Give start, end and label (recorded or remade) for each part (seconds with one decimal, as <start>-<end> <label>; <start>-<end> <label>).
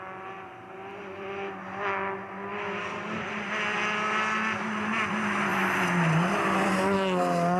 0.0-0.9 recorded; 0.9-1.6 remade; 1.6-2.5 recorded; 2.5-3.3 remade; 3.3-5.5 recorded; 5.5-6.7 remade; 6.7-7.6 recorded